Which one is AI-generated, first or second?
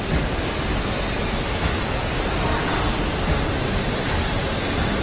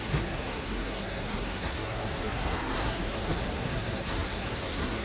second